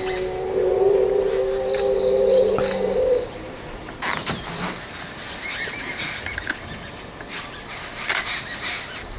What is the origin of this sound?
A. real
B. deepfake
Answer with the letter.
A